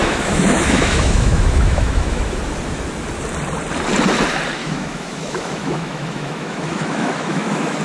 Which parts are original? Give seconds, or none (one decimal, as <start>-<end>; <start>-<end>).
2.4-4.6